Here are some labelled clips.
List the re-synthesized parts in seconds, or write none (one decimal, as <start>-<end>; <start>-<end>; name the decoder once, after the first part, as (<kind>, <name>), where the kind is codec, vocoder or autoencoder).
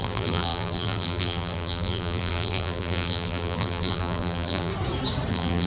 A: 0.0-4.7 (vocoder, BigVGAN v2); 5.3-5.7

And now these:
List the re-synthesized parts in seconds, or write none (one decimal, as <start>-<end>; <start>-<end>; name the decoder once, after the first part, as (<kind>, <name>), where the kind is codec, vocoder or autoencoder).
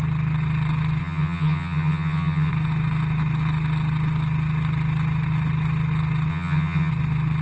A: 1.0-2.5 (vocoder, HiFi-GAN); 6.3-6.9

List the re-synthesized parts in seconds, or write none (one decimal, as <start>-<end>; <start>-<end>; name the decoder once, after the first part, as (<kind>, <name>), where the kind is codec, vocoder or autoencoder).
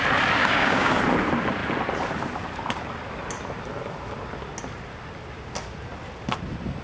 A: 0.4-1.0 (codec, DAC)